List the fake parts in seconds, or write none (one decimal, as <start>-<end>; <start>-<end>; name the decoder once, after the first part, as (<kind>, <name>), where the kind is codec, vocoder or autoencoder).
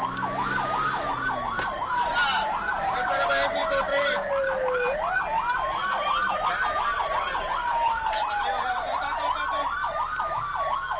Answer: none